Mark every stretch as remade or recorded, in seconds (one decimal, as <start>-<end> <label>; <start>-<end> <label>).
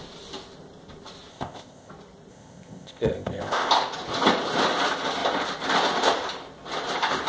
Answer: 0.0-1.3 recorded; 1.3-1.9 remade; 1.9-2.3 recorded; 2.3-3.7 remade; 3.7-7.3 recorded